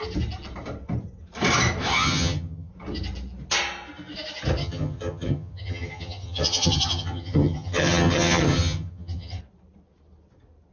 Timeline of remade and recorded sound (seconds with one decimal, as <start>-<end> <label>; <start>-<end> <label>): 0.0-1.9 recorded; 1.9-2.7 remade; 2.7-4.6 recorded; 4.6-9.4 remade; 9.4-10.7 recorded